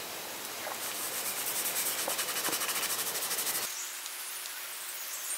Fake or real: real